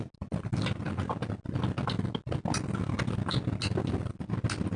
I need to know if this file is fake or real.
real